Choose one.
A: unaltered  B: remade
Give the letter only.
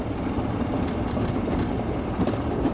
A